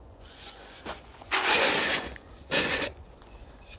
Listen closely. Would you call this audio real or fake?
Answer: fake